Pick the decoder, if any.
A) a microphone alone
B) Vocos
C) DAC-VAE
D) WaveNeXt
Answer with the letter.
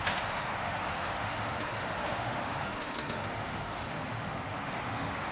C